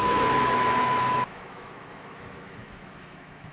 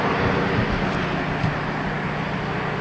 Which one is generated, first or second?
first